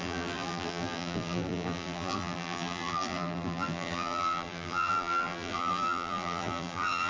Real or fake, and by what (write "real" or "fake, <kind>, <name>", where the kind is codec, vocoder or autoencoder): fake, vocoder, BigVGAN v2